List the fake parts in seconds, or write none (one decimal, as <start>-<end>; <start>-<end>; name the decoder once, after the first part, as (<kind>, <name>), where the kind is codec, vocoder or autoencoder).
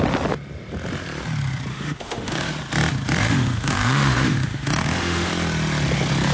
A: 1.7-2.5 (autoencoder, DAC-VAE); 3.2-5.3